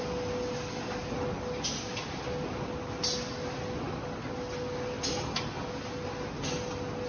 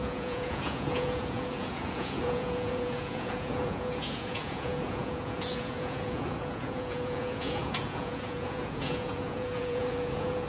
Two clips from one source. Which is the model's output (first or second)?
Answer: second